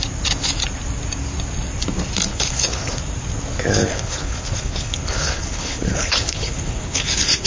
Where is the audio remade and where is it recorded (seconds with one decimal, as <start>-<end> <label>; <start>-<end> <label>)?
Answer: 0.0-2.3 recorded; 2.3-3.0 remade; 3.0-3.8 recorded; 3.8-7.5 remade